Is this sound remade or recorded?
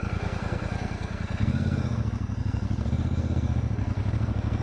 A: remade